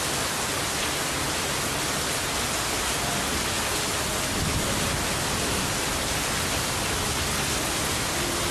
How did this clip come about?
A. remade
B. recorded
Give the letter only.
B